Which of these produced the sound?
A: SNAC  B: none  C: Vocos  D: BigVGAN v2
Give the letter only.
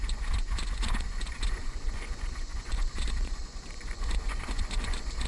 C